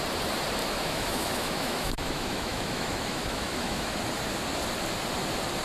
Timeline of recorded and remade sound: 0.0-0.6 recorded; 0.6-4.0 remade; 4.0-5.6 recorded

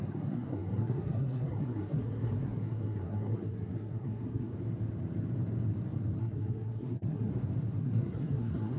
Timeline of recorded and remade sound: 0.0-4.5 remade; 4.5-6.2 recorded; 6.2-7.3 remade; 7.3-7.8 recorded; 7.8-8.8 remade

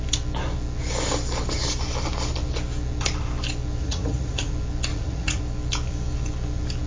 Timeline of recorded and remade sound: 0.0-3.8 recorded; 3.8-4.5 remade; 4.5-4.9 recorded; 4.9-5.4 remade; 5.4-6.9 recorded

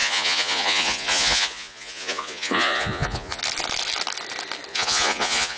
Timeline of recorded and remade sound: 0.0-3.4 remade; 3.4-4.7 recorded; 4.7-5.6 remade